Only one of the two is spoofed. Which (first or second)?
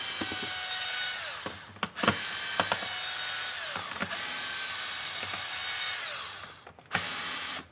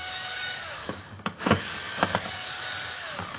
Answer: second